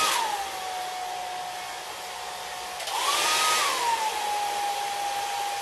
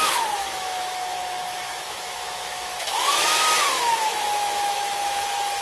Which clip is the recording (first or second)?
first